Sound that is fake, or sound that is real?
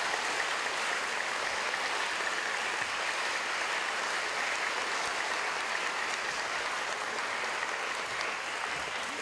real